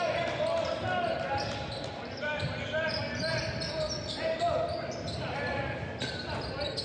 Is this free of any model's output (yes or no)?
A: yes